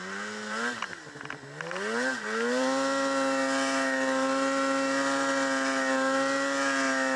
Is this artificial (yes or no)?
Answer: yes